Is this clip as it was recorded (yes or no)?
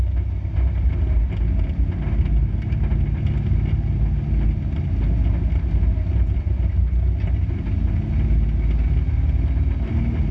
yes